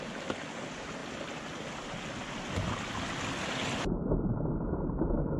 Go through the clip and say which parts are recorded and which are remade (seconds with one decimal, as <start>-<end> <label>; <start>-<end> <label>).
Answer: 0.0-5.4 recorded